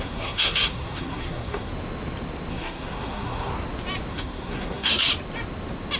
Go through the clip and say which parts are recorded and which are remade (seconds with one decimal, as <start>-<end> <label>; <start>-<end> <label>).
0.0-1.7 remade; 1.7-2.5 recorded; 2.5-3.5 remade; 3.5-4.1 recorded; 4.1-5.1 remade; 5.1-6.0 recorded